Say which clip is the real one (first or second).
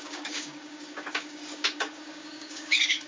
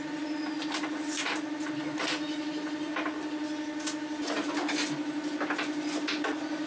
second